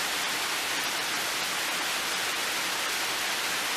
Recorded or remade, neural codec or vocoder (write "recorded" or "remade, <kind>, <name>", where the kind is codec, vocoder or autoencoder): recorded